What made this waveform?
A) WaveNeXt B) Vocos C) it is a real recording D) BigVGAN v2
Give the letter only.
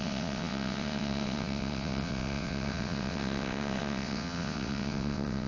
A